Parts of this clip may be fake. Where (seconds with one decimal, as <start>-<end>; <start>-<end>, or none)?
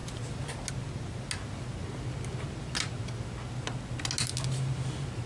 none